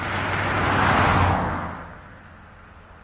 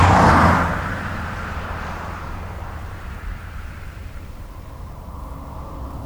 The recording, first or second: first